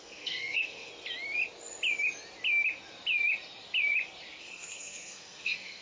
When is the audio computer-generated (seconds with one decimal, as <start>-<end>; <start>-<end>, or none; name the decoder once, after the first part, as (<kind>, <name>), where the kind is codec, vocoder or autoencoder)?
0.0-0.9 (codec, SNAC); 4.4-5.8